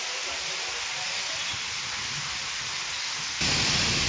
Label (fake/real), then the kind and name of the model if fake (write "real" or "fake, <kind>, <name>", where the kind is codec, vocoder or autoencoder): real